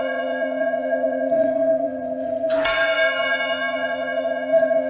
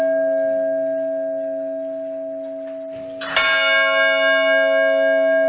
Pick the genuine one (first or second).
second